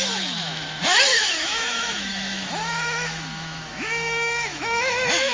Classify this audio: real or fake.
fake